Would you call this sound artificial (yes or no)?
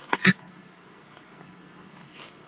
yes